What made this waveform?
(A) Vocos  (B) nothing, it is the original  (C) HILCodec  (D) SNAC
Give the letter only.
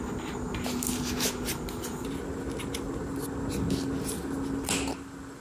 B